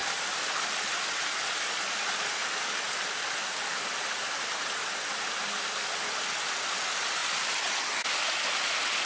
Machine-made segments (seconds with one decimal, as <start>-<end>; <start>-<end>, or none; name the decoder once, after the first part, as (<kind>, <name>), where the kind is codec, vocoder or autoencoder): none